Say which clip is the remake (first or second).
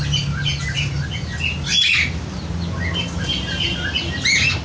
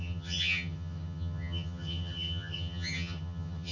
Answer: second